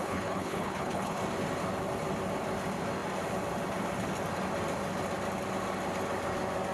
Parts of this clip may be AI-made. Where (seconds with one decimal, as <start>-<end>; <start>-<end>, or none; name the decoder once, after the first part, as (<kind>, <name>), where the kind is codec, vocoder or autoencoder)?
0.0-1.2 (codec, HILCodec)